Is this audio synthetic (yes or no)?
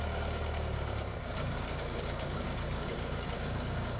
yes